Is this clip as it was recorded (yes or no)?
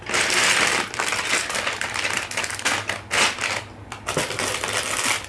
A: yes